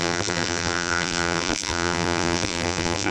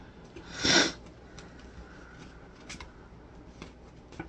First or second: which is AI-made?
first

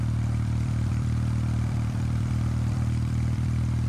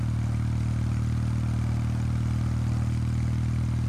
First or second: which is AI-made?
first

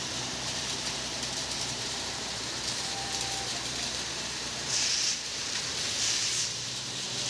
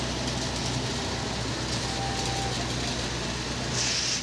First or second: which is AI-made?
first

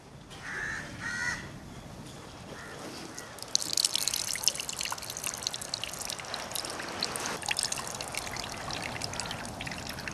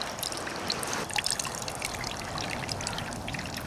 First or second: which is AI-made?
second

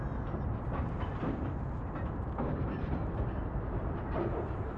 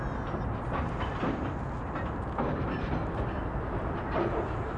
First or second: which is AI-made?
first